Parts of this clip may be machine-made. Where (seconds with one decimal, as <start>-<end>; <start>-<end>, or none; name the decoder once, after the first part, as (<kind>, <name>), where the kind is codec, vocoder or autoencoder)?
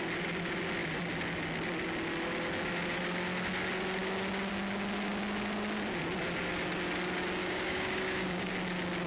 7.4-8.5 (codec, DAC)